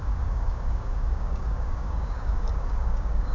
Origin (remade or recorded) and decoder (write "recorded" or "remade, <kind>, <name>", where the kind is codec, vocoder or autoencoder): remade, codec, DAC